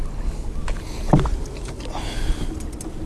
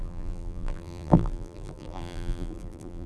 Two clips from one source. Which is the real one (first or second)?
first